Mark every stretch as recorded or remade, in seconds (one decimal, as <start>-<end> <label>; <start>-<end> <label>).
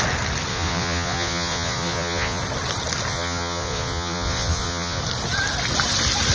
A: 0.0-0.5 recorded; 0.5-2.4 remade; 2.4-3.1 recorded; 3.1-5.0 remade; 5.0-6.3 recorded